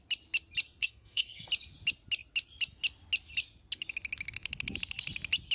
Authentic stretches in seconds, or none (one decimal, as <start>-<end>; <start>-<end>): 0.0-0.8; 1.5-5.5